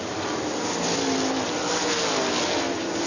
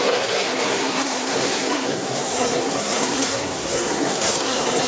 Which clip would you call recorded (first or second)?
first